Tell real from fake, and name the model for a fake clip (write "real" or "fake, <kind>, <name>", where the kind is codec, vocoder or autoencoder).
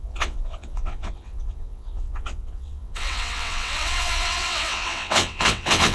fake, vocoder, WaveNeXt